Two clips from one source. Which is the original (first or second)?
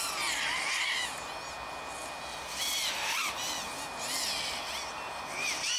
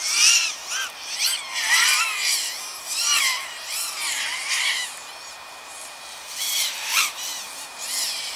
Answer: first